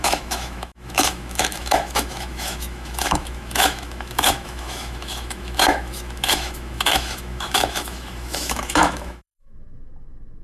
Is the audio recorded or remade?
remade